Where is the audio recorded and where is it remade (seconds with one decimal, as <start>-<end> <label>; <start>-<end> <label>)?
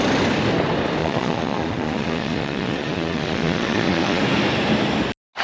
0.0-1.0 recorded; 1.0-4.2 remade; 4.2-5.4 recorded